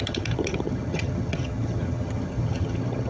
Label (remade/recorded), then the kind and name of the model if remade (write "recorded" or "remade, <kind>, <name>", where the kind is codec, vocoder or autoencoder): remade, vocoder, HiFi-GAN